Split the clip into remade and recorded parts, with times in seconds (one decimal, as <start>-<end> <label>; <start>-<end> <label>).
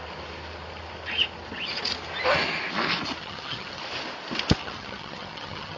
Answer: 0.0-3.2 recorded; 3.2-3.8 remade; 3.8-4.6 recorded; 4.6-5.8 remade